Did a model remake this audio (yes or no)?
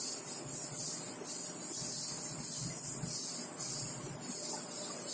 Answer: no